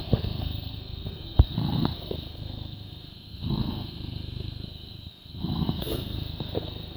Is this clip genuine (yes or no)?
no